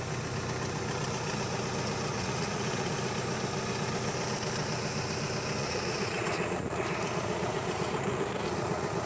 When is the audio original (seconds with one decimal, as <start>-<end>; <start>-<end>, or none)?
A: 0.0-2.1; 2.9-5.6